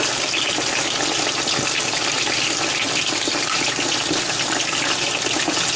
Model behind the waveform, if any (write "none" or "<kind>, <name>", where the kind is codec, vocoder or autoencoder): none